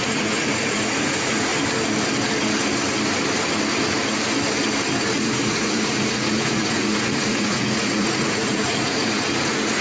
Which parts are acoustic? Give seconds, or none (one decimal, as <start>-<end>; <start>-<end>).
1.5-5.0